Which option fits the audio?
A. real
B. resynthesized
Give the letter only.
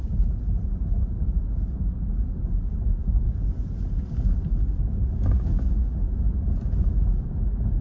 A